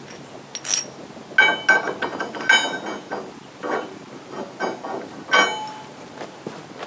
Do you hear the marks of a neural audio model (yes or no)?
no